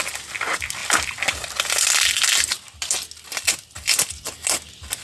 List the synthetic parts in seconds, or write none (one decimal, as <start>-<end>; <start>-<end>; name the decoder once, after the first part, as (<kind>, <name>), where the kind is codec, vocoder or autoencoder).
none